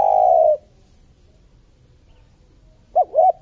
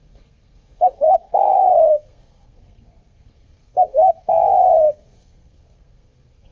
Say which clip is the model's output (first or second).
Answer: second